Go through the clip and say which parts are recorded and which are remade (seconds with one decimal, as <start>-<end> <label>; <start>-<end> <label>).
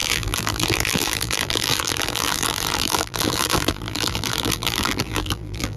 0.0-5.8 remade